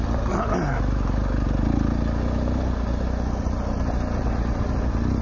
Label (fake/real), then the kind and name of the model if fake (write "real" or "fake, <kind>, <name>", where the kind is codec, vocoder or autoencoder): real